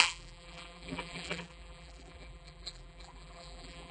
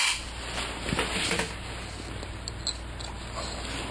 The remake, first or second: first